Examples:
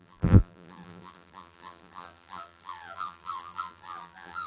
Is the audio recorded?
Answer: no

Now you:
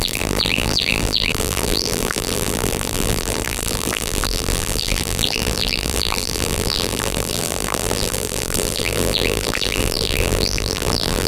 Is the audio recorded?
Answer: no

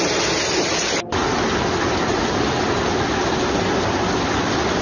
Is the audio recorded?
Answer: yes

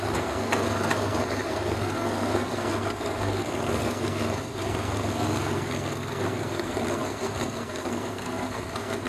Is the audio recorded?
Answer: no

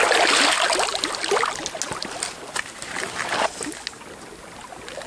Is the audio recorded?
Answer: yes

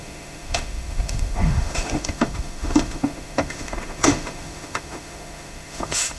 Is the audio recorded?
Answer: no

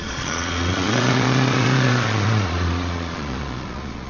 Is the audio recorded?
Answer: no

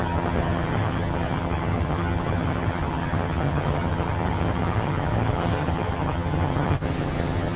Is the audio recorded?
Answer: no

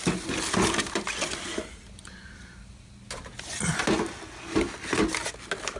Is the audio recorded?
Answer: yes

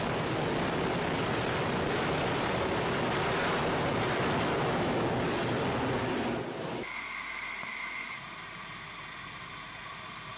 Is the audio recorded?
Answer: yes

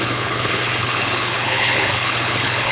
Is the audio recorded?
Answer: no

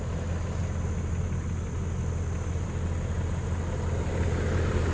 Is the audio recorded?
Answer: yes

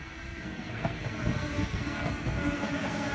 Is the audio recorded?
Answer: no